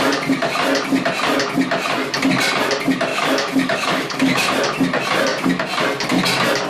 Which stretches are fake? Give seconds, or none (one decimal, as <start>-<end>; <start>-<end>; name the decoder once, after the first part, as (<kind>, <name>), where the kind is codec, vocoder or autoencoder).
3.1-4.5 (autoencoder, DAC-VAE)